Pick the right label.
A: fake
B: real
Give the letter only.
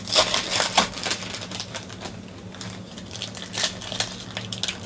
B